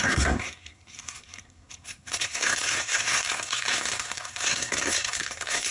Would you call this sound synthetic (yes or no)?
yes